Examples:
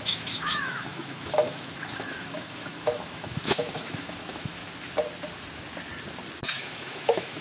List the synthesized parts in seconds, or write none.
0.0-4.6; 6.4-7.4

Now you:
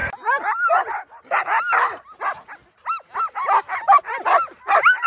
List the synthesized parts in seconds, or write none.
none

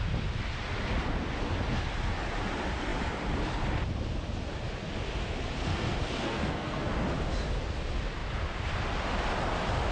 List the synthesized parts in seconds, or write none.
5.7-6.9

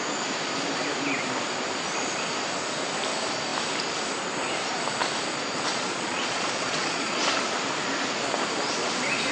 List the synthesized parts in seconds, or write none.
5.7-7.3